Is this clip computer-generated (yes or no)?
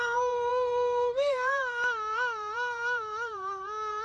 yes